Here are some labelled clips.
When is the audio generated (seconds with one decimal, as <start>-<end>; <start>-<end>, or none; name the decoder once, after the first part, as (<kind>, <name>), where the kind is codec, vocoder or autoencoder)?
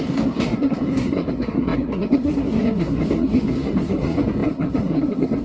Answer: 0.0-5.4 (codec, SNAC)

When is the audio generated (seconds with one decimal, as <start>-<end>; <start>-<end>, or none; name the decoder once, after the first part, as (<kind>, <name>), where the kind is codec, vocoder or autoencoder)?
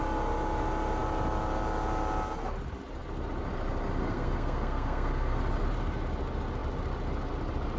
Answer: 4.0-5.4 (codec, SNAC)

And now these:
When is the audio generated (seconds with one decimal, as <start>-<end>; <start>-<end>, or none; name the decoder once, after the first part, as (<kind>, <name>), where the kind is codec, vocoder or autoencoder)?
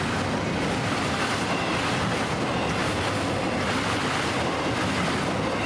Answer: none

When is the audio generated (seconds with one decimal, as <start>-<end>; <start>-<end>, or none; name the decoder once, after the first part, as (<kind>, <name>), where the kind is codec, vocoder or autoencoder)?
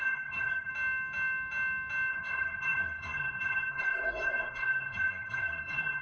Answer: 0.0-0.7 (codec, SNAC); 2.1-6.0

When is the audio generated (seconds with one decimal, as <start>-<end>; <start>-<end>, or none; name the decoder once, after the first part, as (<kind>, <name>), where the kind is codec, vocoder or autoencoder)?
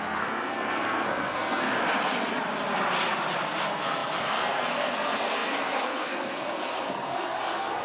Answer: 0.0-1.8 (codec, SNAC); 3.6-7.8